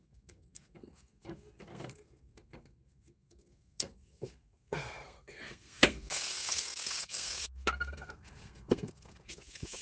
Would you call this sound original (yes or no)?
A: no